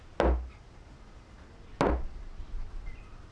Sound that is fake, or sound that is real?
real